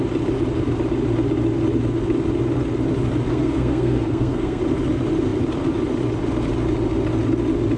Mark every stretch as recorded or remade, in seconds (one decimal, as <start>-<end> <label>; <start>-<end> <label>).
0.0-3.3 recorded; 3.3-4.6 remade; 4.6-7.8 recorded